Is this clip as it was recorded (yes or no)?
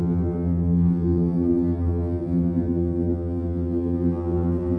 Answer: no